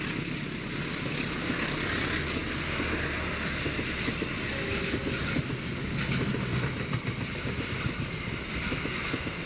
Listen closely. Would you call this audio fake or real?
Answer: real